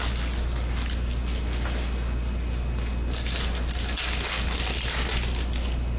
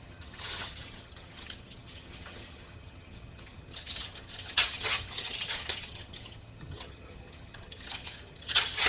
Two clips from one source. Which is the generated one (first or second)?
second